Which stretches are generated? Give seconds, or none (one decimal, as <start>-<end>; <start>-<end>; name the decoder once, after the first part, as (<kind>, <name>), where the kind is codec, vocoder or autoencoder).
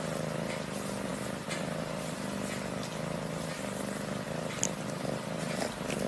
none